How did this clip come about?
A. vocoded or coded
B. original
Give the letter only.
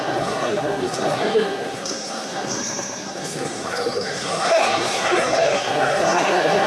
A